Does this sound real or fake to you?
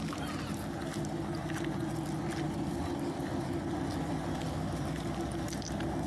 real